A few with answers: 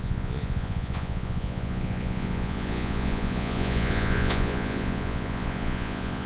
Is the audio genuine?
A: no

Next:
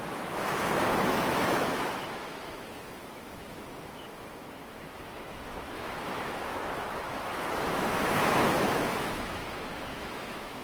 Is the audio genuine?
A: no